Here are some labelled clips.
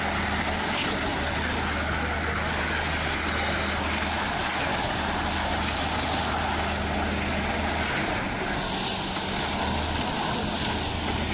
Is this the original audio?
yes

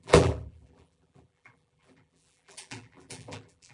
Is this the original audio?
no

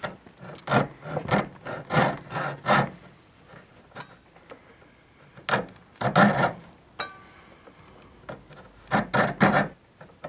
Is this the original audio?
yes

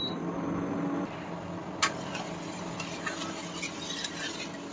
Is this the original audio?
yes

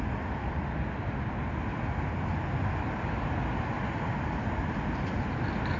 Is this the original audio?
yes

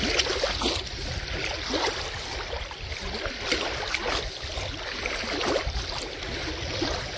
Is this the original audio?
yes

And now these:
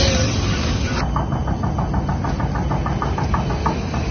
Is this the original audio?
yes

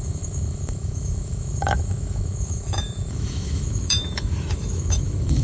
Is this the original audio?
no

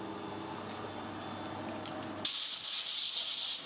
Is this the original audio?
yes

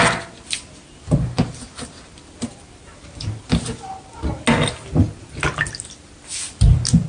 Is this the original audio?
yes